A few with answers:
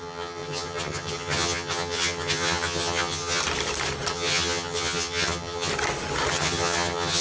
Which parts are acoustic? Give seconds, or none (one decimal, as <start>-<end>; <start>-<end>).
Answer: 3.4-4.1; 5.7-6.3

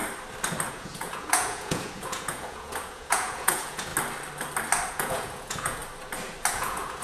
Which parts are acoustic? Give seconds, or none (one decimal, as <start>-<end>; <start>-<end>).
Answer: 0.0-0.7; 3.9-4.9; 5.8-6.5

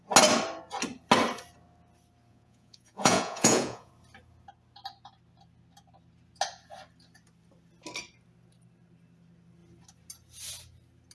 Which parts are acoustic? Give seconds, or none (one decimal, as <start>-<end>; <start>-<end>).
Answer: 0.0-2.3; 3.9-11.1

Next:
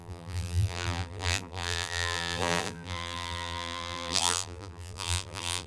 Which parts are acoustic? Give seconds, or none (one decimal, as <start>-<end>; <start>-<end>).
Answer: none